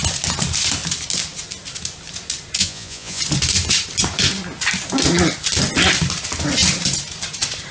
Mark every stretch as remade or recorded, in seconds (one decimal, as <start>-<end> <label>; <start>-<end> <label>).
0.0-2.6 recorded; 2.6-3.2 remade; 3.2-7.7 recorded